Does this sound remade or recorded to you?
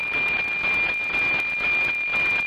recorded